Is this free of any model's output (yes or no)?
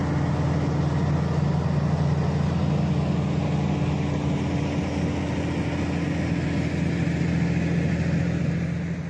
yes